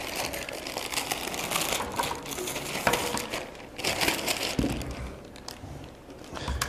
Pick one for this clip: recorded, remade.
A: recorded